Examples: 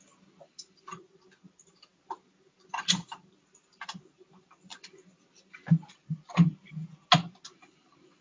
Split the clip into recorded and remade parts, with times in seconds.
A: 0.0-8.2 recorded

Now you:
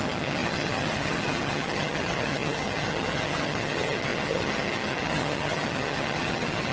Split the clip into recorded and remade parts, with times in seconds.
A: 0.0-6.7 remade